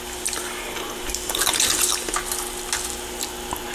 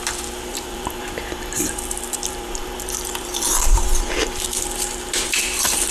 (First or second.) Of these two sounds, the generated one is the second